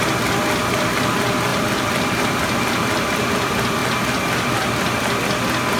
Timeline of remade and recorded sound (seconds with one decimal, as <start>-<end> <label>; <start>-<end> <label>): 0.0-1.5 recorded; 1.5-3.2 remade; 3.2-5.8 recorded